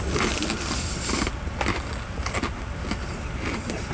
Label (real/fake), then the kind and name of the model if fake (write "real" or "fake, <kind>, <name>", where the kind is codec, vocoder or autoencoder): real